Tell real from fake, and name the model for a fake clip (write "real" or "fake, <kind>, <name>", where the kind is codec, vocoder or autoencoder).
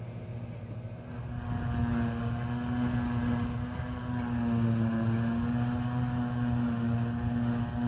real